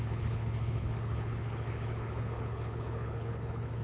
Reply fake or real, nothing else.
fake